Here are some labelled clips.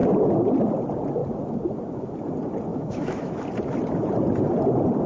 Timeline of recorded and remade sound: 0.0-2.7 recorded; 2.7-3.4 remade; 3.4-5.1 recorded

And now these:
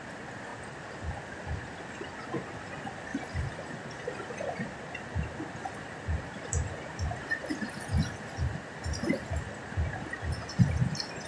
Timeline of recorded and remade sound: 0.0-11.3 recorded

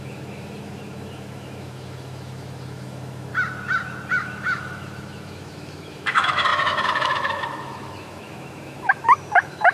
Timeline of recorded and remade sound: 0.0-3.3 remade; 3.3-4.1 recorded; 4.1-9.7 remade

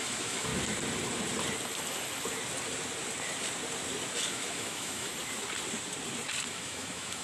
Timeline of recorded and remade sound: 0.0-0.5 remade; 0.5-4.2 recorded; 4.2-5.1 remade; 5.1-6.5 recorded; 6.5-7.2 remade

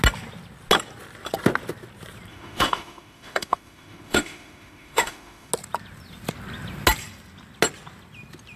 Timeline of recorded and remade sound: 0.0-2.3 recorded; 2.3-5.5 remade; 5.5-8.6 recorded

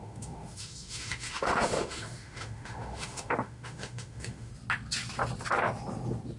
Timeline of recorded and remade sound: 0.0-4.5 remade; 4.5-6.4 recorded